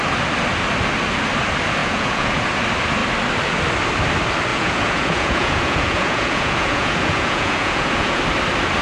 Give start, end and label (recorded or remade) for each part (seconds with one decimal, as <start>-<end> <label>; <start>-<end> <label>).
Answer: 0.0-1.8 recorded; 1.8-2.4 remade; 2.4-4.5 recorded; 4.5-8.2 remade; 8.2-8.8 recorded